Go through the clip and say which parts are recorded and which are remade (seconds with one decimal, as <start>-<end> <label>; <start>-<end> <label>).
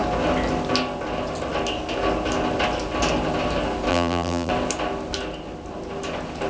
0.0-3.9 recorded; 3.9-4.5 remade; 4.5-6.5 recorded